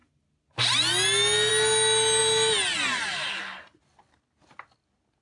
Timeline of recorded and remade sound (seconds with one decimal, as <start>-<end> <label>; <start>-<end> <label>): 0.0-5.2 recorded